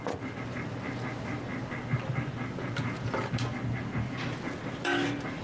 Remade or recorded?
recorded